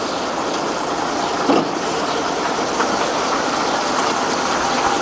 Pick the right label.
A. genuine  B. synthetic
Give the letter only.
A